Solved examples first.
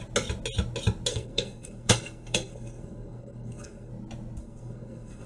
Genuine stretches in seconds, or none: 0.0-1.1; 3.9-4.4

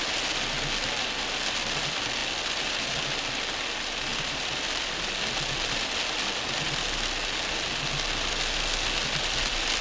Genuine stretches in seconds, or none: 0.0-4.1; 6.0-9.8

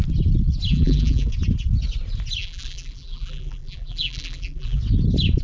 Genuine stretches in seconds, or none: 0.0-0.7; 1.3-2.4; 4.8-5.4

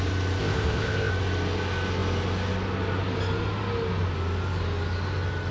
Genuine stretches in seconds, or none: 0.0-0.4; 1.1-5.5

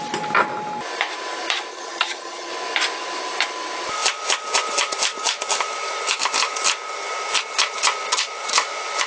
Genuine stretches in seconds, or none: 0.0-1.7; 2.5-9.1

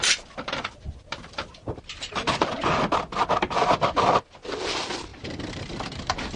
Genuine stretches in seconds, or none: 0.0-5.1

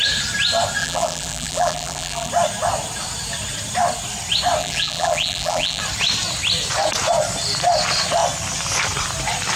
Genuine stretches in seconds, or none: 0.0-0.8; 2.3-4.6; 5.8-9.6